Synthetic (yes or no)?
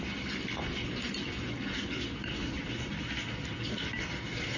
no